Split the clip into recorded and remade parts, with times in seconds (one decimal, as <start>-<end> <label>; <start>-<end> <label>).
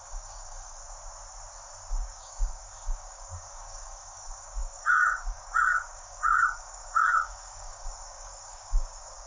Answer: 0.0-0.8 remade; 0.8-1.9 recorded; 1.9-9.3 remade